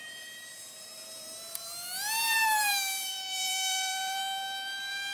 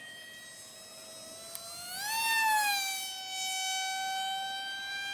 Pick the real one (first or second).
second